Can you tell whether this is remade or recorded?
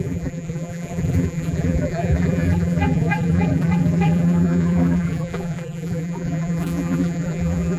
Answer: remade